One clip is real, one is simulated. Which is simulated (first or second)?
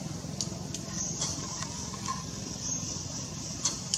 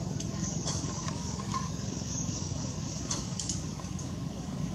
second